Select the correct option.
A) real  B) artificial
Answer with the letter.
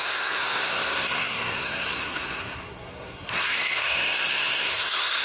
B